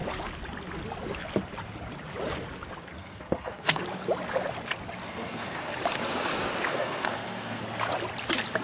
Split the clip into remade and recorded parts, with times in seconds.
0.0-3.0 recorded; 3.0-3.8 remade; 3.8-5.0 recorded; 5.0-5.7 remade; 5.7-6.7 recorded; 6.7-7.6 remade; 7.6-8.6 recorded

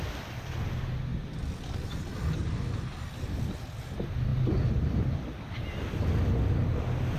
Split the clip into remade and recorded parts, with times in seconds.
0.0-7.2 recorded